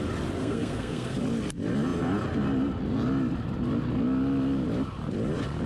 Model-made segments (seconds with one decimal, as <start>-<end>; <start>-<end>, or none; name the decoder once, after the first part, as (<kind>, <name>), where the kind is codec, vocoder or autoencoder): 0.4-1.2 (codec, SNAC)